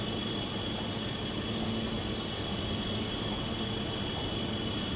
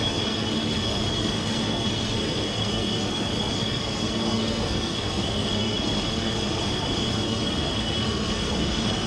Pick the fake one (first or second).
second